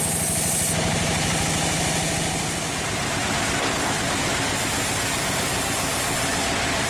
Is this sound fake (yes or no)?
no